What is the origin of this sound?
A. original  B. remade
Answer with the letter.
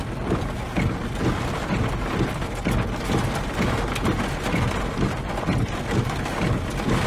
A